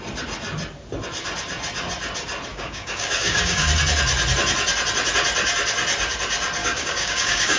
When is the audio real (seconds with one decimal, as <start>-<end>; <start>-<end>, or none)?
0.0-2.5; 3.7-6.6